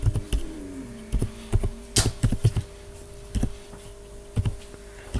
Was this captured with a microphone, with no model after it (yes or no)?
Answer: yes